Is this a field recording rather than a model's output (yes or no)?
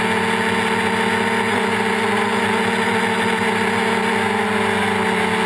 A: yes